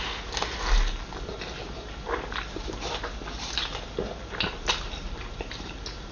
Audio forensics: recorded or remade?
recorded